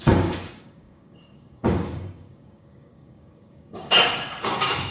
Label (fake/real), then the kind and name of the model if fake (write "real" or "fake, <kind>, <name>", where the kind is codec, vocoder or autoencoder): fake, codec, DAC